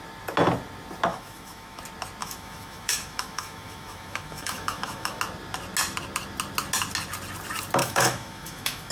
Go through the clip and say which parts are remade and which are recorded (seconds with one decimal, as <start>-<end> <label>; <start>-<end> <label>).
0.0-1.1 recorded; 1.1-1.8 remade; 1.8-2.2 recorded; 2.2-5.2 remade; 5.2-7.8 recorded; 7.8-8.9 remade